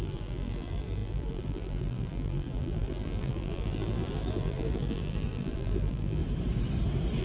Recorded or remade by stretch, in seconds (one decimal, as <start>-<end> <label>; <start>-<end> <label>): 0.0-6.2 remade; 6.2-7.2 recorded